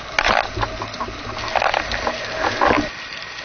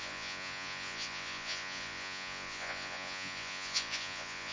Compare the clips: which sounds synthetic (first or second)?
second